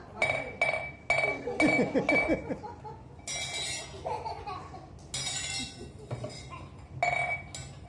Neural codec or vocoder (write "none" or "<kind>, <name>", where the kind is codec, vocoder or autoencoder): none